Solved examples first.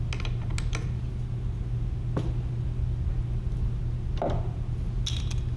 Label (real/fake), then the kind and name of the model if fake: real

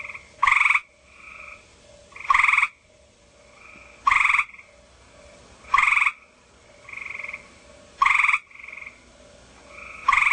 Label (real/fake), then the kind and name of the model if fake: real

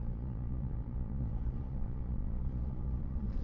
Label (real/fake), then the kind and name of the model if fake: fake, vocoder, Vocos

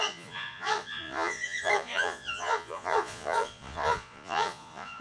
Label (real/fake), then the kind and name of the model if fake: fake, vocoder, Vocos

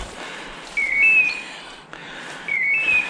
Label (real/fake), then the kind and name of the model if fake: real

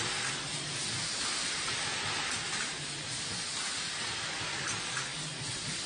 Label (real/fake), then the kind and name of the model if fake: real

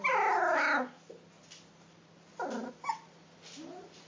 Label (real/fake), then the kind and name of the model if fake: real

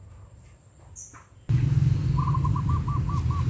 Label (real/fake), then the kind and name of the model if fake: real